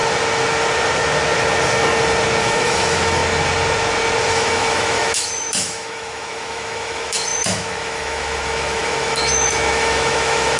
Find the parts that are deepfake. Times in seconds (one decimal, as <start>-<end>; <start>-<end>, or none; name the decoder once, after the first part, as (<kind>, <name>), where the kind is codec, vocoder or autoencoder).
2.4-3.2 (autoencoder, DAC-VAE); 4.3-10.6